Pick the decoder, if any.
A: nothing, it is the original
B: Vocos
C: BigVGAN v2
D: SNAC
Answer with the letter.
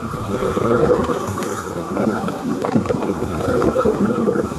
D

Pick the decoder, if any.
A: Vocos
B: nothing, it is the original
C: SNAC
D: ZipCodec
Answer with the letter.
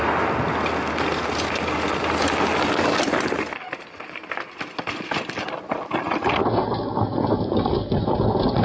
B